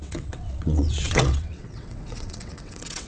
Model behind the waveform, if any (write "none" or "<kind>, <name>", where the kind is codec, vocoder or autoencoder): vocoder, WaveNeXt